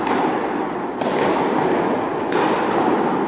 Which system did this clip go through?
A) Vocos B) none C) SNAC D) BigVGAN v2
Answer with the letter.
B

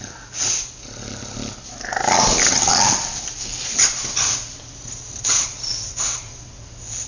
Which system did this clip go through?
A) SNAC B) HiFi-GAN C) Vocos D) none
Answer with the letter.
D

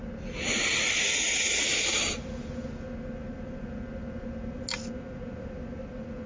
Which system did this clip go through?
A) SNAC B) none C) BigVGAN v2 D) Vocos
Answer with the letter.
B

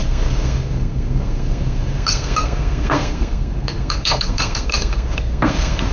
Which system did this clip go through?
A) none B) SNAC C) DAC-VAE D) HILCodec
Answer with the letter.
B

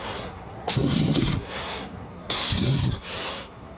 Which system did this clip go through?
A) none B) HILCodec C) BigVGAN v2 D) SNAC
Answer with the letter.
D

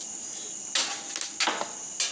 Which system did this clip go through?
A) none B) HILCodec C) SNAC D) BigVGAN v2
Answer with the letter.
A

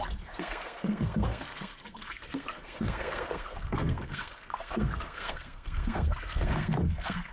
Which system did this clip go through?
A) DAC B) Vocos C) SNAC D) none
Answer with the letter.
C